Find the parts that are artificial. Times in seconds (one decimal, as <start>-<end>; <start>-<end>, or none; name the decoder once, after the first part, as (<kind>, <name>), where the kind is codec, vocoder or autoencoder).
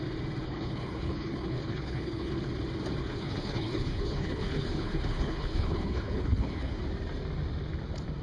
0.4-2.5 (codec, HILCodec); 3.0-6.8